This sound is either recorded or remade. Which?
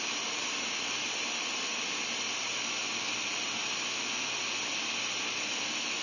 recorded